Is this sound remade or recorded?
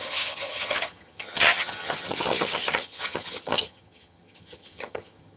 remade